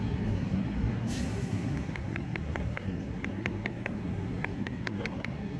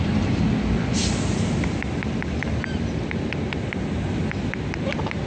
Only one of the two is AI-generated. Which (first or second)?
first